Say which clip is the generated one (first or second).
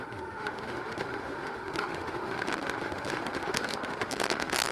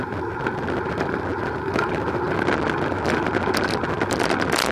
first